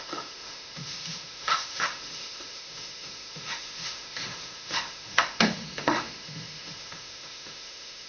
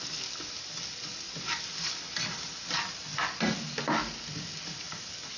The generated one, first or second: first